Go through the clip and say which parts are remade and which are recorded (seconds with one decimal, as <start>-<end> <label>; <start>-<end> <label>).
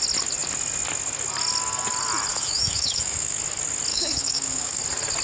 0.0-2.3 recorded; 2.3-3.4 remade; 3.4-3.9 recorded; 3.9-4.8 remade; 4.8-5.2 recorded